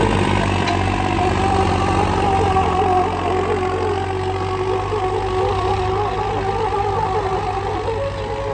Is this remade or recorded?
recorded